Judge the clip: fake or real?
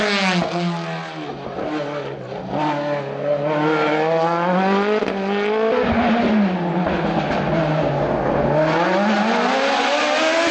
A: real